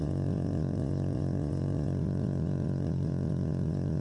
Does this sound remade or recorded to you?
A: remade